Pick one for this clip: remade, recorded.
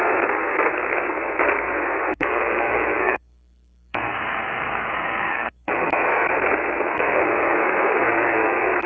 remade